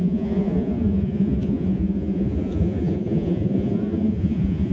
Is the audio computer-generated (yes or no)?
yes